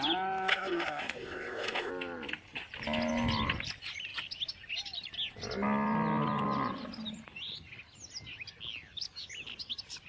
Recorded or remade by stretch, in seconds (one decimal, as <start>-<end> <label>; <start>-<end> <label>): 0.0-0.5 recorded; 0.5-1.9 remade; 1.9-10.1 recorded